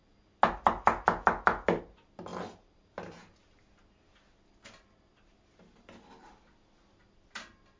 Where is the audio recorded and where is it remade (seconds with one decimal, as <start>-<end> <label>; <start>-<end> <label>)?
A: 0.0-7.8 recorded

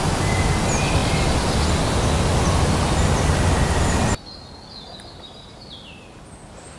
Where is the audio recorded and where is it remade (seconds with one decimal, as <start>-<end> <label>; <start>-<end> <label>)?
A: 0.0-6.8 recorded

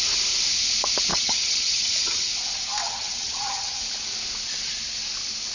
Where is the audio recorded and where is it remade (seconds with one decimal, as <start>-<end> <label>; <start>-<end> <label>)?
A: 0.0-1.1 recorded; 1.1-2.3 remade; 2.3-2.8 recorded; 2.8-3.8 remade; 3.8-5.5 recorded

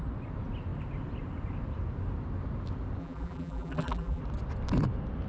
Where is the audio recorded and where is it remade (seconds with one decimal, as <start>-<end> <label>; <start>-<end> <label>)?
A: 0.0-3.0 recorded; 3.0-4.2 remade; 4.2-5.3 recorded